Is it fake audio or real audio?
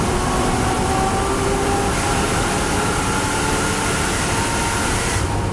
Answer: real